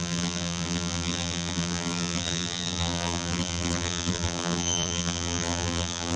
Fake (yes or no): yes